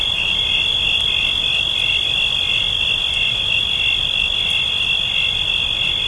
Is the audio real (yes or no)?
no